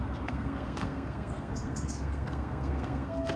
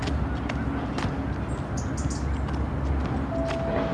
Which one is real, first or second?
second